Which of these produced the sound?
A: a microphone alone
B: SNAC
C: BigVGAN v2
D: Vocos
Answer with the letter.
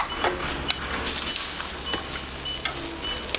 A